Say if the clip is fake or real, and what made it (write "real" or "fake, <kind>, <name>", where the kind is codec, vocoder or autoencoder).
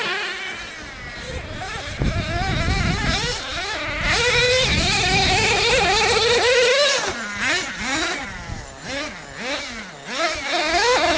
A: real